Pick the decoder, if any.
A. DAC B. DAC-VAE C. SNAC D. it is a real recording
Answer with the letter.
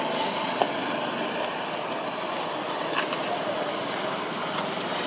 D